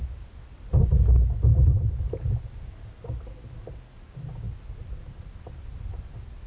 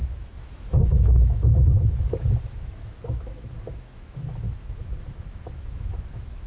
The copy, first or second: second